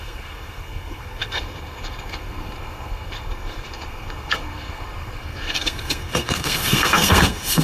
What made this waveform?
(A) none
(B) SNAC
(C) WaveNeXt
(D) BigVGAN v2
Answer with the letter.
B